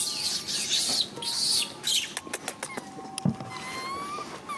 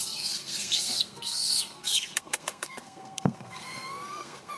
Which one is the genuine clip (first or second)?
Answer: first